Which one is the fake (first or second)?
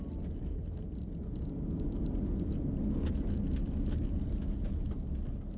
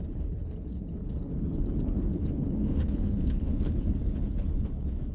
second